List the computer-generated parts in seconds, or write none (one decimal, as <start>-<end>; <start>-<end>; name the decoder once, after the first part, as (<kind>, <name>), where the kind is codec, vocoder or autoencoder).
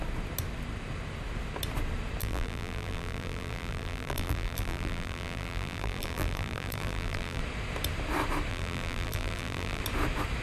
2.2-7.4 (vocoder, BigVGAN v2); 8.5-9.8